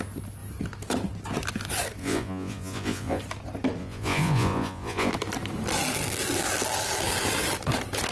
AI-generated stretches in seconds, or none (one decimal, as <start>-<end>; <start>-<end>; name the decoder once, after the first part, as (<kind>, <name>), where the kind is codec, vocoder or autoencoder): 2.0-3.2 (vocoder, Vocos); 3.8-5.1